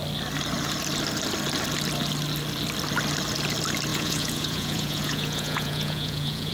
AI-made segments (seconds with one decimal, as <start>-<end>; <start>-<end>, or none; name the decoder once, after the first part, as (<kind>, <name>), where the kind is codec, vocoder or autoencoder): 3.9-6.5 (vocoder, Vocos)